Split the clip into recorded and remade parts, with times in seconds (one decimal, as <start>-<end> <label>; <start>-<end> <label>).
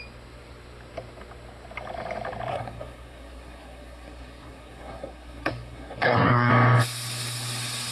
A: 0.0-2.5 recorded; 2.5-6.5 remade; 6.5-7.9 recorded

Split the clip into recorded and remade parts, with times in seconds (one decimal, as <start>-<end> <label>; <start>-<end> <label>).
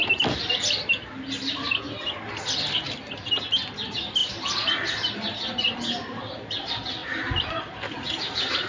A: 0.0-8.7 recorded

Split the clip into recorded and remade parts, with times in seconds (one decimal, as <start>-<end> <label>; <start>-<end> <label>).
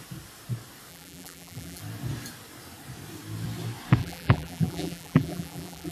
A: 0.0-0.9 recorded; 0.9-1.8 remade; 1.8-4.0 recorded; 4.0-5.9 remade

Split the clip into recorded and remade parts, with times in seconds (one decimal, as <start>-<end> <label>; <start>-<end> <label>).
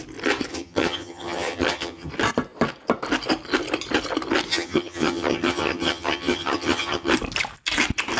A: 0.0-0.5 recorded; 0.5-2.1 remade; 2.1-4.5 recorded; 4.5-7.1 remade; 7.1-8.2 recorded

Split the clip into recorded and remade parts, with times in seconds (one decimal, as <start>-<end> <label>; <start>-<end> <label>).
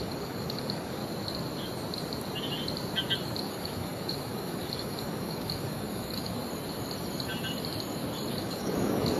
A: 0.0-1.0 remade; 1.0-3.5 recorded; 3.5-6.4 remade; 6.4-8.3 recorded; 8.3-9.2 remade